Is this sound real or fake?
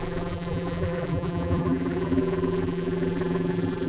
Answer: fake